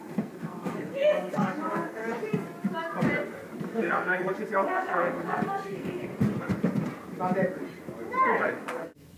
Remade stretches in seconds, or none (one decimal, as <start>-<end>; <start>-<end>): 0.0-2.0; 3.6-6.1; 8.4-9.2